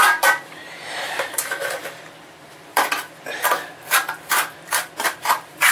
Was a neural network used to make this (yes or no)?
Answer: yes